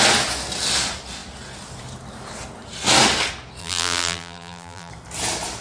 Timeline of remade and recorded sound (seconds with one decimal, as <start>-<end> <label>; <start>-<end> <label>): 0.0-3.6 recorded; 3.6-4.9 remade; 4.9-5.6 recorded